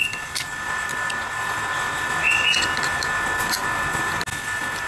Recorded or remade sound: recorded